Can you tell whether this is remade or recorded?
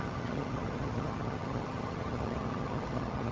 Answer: remade